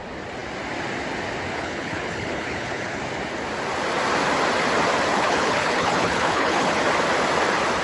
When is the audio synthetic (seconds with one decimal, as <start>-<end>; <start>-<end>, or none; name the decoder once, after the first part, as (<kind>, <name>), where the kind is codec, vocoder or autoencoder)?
1.5-3.0 (codec, HILCodec); 5.1-6.8